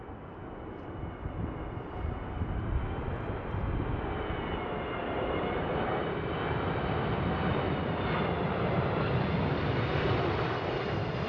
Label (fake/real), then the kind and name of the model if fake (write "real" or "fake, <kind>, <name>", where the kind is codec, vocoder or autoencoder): real